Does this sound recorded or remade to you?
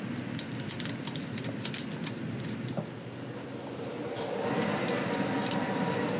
recorded